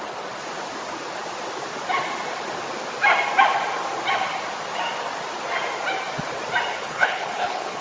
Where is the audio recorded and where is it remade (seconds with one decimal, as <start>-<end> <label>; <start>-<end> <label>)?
0.0-6.7 recorded; 6.7-7.8 remade